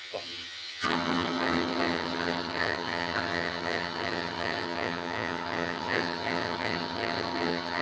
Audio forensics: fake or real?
fake